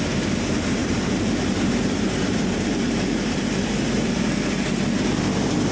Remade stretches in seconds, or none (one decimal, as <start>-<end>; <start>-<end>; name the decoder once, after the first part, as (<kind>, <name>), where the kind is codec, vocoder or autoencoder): 0.8-4.2 (vocoder, BigVGAN v2)